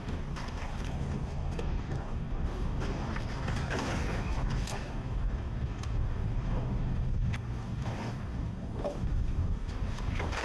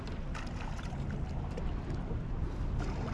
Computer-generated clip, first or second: first